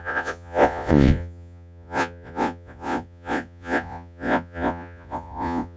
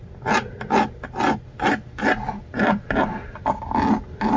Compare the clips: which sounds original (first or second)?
second